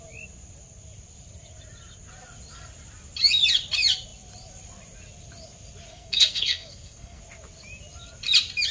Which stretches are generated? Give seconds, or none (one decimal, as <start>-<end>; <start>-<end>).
5.9-7.2